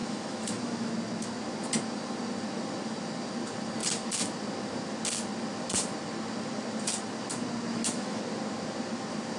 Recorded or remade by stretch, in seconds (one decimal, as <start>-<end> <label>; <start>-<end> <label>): 0.0-0.9 remade; 0.9-7.7 recorded; 7.7-8.2 remade; 8.2-9.4 recorded

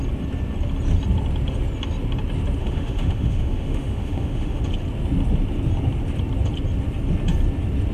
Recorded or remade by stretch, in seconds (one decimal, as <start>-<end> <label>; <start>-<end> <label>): 0.0-2.6 recorded; 2.6-4.6 remade; 4.6-7.9 recorded

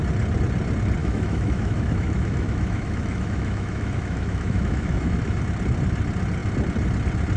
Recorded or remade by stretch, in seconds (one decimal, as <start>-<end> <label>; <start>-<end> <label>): 0.0-1.0 recorded; 1.0-5.4 remade; 5.4-7.4 recorded

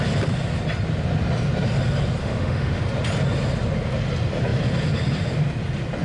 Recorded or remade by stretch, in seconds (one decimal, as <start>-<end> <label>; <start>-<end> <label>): 0.0-2.2 recorded; 2.2-2.8 remade; 2.8-6.0 recorded

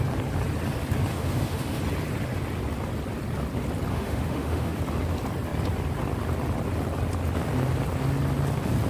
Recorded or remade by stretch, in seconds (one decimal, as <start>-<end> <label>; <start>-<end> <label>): 0.0-1.1 recorded; 1.1-1.8 remade; 1.8-3.9 recorded; 3.9-4.8 remade; 4.8-8.9 recorded

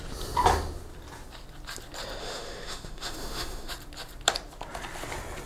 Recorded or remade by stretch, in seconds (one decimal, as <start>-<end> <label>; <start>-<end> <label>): 0.0-2.2 recorded; 2.2-3.7 remade; 3.7-5.5 recorded

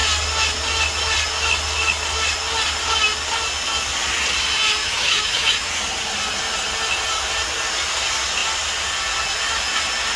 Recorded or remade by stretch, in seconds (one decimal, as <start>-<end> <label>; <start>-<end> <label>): 0.0-4.8 recorded; 4.8-5.7 remade; 5.7-10.2 recorded

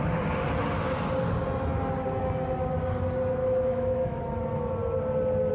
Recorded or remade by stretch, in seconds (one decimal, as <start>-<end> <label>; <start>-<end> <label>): 0.0-3.4 recorded; 3.4-4.2 remade; 4.2-5.5 recorded